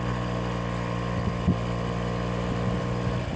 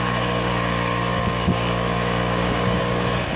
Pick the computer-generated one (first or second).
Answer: second